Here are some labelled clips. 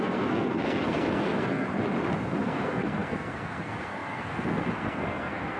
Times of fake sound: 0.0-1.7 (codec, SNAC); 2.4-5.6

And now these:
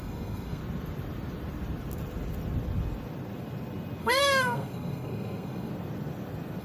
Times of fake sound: 0.0-0.6 (codec, SNAC); 4.0-5.7

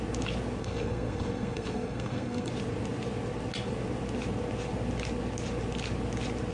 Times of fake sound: 0.6-2.5 (codec, SNAC)

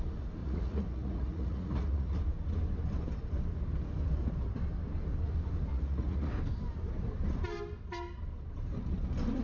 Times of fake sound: 0.4-2.2 (vocoder, Vocos); 5.7-6.3

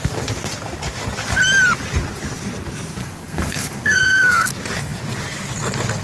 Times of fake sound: 3.0-4.5 (codec, SNAC)

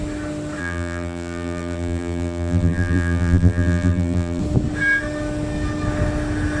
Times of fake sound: 0.6-4.4 (vocoder, BigVGAN v2)

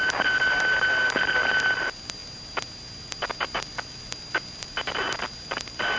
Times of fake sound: none

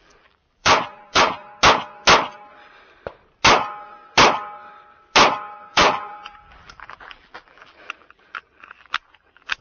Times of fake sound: 0.0-1.4 (vocoder, BigVGAN v2); 5.7-9.6